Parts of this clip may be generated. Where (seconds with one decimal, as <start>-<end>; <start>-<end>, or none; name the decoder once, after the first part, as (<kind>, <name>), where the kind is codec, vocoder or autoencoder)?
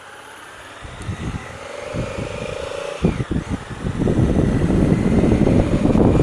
1.1-1.6 (codec, DAC)